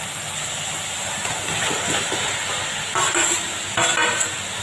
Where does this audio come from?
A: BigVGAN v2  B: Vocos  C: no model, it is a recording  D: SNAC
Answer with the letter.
C